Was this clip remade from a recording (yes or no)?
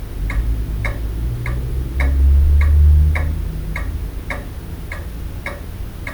no